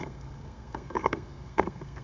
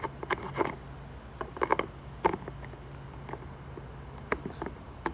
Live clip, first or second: second